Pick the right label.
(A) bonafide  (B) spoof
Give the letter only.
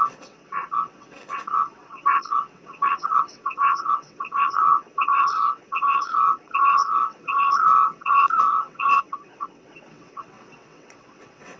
B